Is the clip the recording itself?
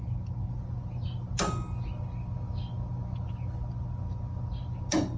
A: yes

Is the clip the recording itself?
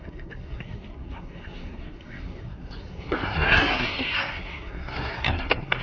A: no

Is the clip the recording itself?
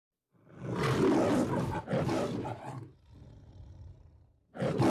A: yes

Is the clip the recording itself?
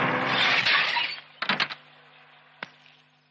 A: yes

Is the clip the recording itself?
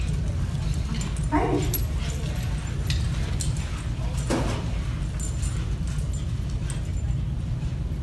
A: yes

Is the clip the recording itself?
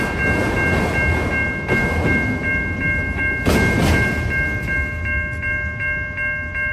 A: yes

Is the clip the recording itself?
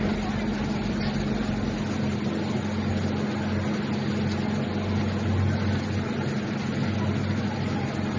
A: yes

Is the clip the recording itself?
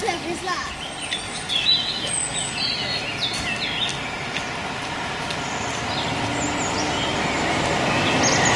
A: yes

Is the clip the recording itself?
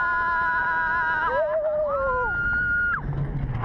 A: yes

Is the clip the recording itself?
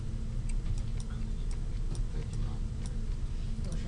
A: yes